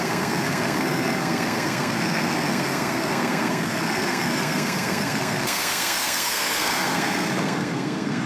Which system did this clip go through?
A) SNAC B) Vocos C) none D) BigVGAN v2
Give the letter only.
A